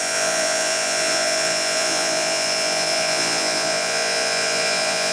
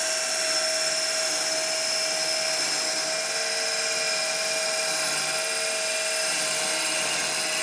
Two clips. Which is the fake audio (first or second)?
first